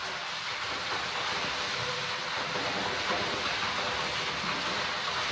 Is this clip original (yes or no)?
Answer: yes